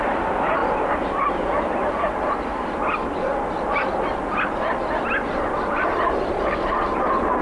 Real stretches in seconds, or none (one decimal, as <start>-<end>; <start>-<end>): 0.0-7.4